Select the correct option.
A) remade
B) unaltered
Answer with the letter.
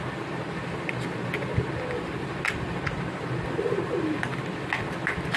B